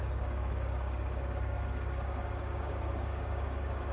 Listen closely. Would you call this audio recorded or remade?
remade